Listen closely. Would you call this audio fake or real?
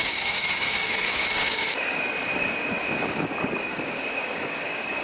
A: fake